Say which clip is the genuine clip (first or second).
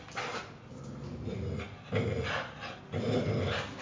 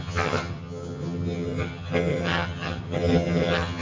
first